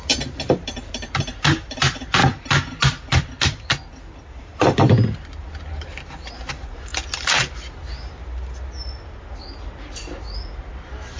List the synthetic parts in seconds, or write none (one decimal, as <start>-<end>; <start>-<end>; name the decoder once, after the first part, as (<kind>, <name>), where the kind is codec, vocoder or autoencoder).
0.0-2.2 (vocoder, BigVGAN v2); 4.4-6.9; 10.6-11.2